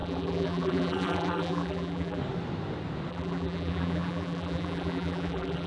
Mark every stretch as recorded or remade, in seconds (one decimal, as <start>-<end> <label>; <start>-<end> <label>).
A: 0.0-2.2 remade; 2.2-3.1 recorded; 3.1-5.7 remade